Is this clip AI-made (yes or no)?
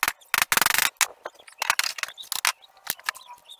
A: no